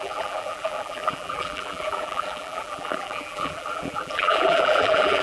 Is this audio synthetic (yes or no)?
yes